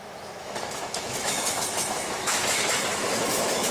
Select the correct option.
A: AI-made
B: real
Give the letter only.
A